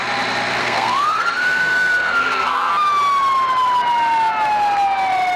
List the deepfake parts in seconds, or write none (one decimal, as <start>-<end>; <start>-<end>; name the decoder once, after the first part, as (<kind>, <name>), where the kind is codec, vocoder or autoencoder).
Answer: 0.6-2.7 (codec, SNAC)